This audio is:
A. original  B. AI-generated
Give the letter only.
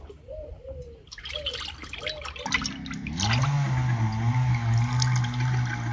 A